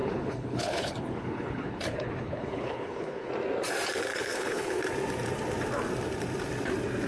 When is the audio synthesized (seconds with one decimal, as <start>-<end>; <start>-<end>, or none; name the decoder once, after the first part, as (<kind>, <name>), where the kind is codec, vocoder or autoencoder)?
0.0-3.3 (codec, HILCodec); 4.1-4.8